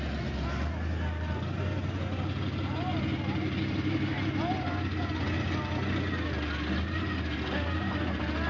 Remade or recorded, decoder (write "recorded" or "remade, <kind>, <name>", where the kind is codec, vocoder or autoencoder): recorded